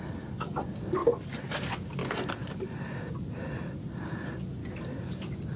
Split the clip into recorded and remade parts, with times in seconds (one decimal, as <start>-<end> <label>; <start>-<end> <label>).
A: 0.0-1.0 recorded; 1.0-1.6 remade; 1.6-5.6 recorded